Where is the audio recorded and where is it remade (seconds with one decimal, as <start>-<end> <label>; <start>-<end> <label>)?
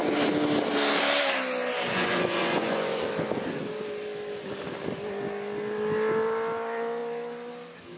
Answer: 0.0-1.9 recorded; 1.9-3.1 remade; 3.1-8.0 recorded